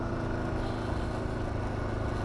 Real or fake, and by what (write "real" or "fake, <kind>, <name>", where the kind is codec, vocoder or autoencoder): real